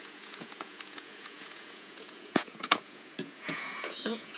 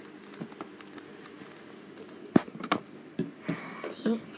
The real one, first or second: second